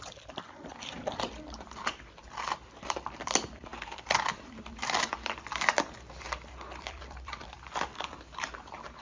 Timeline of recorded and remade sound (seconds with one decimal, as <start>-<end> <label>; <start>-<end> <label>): 0.0-9.0 remade